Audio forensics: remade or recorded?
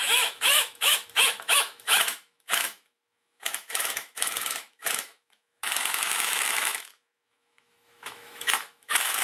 remade